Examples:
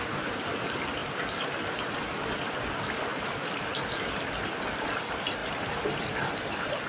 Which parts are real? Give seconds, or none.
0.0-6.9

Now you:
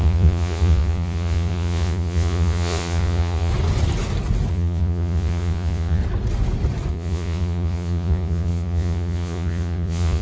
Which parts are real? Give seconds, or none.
3.5-4.5; 6.0-6.9

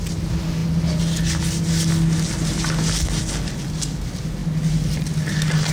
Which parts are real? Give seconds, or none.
0.0-5.7